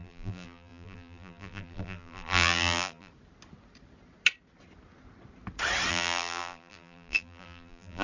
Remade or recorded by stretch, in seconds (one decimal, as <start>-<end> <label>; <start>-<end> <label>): 0.0-3.1 remade; 3.1-5.9 recorded; 5.9-8.0 remade